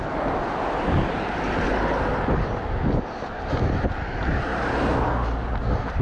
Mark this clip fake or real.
real